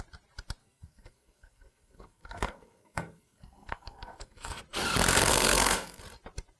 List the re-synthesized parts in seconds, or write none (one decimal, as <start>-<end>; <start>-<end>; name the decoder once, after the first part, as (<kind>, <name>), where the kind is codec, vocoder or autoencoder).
0.6-4.6 (codec, SNAC); 5.3-6.0